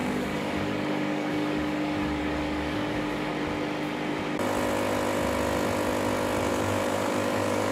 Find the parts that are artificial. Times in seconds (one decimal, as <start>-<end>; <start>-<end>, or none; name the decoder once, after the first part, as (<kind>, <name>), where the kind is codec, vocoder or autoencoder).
0.0-3.3 (codec, DAC); 6.5-7.7